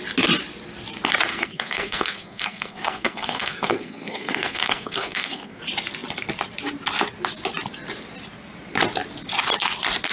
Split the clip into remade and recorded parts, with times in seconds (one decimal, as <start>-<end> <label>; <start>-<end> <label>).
0.0-1.3 recorded; 1.3-5.6 remade; 5.6-10.1 recorded